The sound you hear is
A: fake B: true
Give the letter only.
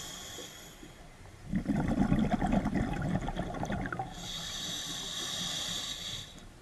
B